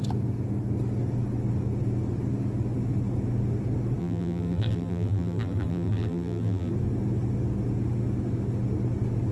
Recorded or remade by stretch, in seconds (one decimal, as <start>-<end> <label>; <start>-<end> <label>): 0.0-4.0 recorded; 4.0-6.7 remade; 6.7-9.3 recorded